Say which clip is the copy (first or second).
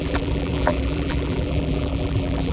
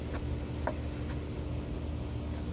first